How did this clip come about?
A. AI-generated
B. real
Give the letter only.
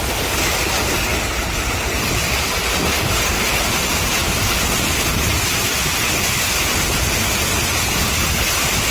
B